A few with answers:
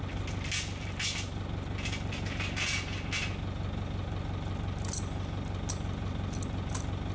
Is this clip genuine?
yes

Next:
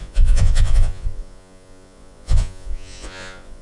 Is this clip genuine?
no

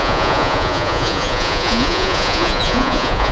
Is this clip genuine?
no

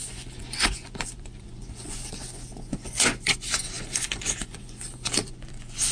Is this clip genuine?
no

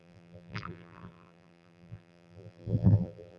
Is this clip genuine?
no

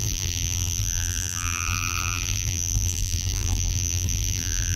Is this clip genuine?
no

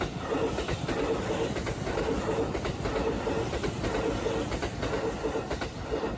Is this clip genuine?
yes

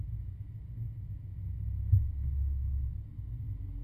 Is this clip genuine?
yes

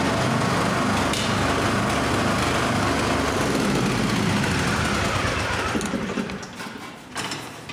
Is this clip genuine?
yes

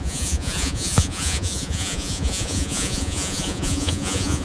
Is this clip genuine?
no